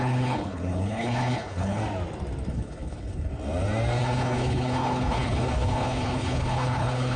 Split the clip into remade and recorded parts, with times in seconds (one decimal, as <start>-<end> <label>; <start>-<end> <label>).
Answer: 0.0-1.8 remade; 1.8-2.5 recorded; 2.5-3.3 remade; 3.3-4.0 recorded; 4.0-7.2 remade